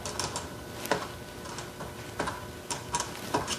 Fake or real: real